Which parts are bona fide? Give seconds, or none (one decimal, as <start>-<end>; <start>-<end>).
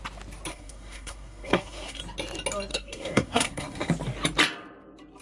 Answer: 0.0-0.5; 2.0-2.7; 3.9-5.2